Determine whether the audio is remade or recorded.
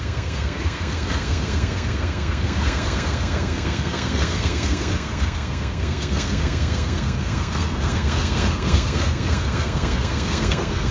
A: remade